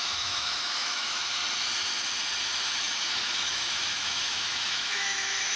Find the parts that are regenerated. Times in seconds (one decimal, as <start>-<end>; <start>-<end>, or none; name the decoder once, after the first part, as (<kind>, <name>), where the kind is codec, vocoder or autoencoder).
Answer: 0.0-1.4 (autoencoder, DAC-VAE); 2.4-5.6